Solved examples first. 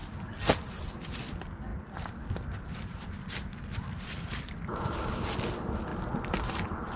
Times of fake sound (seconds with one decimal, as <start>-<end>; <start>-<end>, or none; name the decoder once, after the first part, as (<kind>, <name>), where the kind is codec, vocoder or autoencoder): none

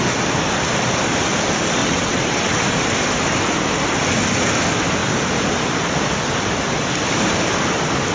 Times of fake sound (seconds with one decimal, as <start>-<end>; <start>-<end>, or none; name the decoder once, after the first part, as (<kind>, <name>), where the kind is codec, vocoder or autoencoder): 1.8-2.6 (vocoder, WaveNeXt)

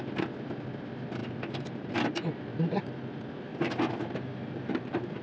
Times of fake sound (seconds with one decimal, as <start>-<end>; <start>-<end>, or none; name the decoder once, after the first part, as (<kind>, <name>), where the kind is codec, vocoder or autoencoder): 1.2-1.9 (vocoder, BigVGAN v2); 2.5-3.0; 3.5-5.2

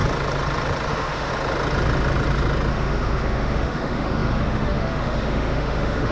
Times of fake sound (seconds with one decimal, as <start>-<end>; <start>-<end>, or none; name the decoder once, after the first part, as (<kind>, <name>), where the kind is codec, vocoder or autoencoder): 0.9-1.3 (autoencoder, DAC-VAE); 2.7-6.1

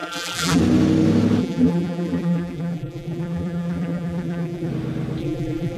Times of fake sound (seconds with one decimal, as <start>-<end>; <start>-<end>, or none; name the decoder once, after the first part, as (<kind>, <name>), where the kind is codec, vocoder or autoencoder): 0.0-0.6 (vocoder, BigVGAN v2); 1.4-4.7; 5.2-5.8